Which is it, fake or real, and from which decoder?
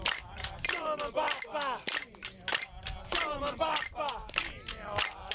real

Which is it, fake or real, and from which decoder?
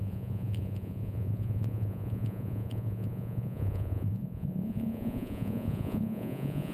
fake, vocoder, Vocos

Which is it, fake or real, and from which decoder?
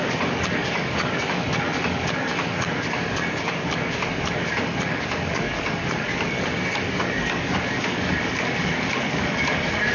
fake, codec, DAC